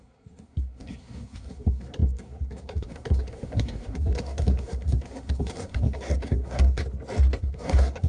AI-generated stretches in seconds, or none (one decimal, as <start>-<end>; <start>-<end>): 0.0-6.8; 7.4-8.1